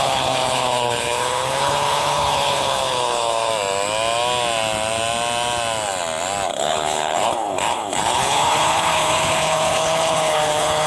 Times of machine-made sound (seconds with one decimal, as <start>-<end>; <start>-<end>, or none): 0.0-3.5; 6.5-10.9